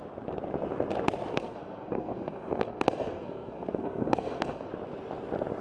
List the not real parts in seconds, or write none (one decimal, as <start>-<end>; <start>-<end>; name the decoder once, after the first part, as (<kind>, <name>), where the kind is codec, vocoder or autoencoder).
1.3-4.7 (codec, SNAC)